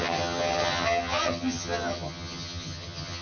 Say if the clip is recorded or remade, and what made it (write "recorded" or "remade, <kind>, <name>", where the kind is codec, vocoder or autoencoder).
remade, vocoder, HiFi-GAN